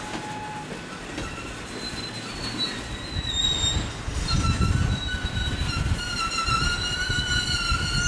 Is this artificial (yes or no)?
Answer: no